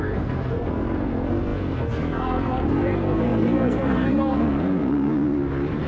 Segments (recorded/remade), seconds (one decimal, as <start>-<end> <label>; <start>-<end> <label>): 0.0-5.1 remade; 5.1-5.9 recorded